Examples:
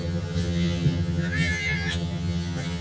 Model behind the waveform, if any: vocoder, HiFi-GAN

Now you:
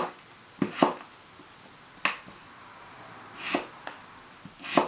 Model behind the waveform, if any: none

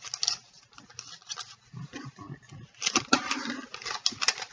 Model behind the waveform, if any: none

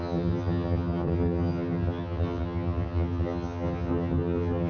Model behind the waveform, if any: vocoder, HiFi-GAN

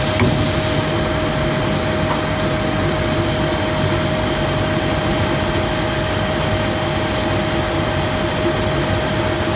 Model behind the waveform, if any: none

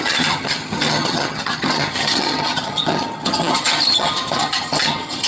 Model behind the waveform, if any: vocoder, HiFi-GAN